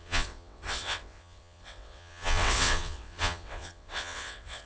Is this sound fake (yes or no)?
yes